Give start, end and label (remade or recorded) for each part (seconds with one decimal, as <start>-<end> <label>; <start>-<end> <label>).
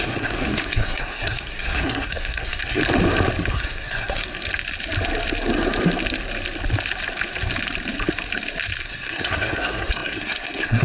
0.0-2.8 remade; 2.8-3.5 recorded; 3.5-4.2 remade; 4.2-8.8 recorded; 8.8-10.8 remade